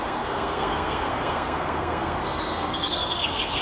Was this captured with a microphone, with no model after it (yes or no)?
no